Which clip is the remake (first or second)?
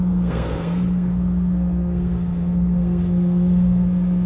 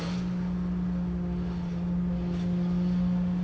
first